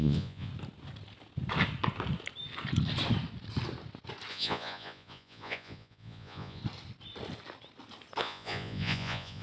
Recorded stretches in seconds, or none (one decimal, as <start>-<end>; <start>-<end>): 0.5-4.3; 6.6-8.2